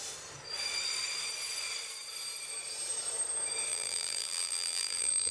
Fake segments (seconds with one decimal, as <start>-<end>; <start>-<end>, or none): 3.7-5.3